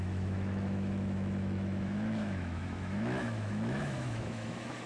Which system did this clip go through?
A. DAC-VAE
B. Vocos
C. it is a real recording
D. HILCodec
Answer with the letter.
A